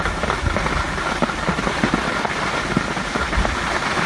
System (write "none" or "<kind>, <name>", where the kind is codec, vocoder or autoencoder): none